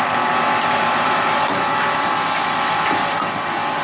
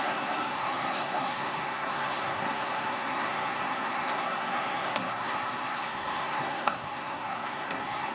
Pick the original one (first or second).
first